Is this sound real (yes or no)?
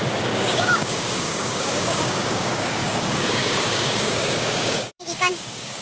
no